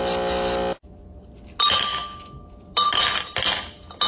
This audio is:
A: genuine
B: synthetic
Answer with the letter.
A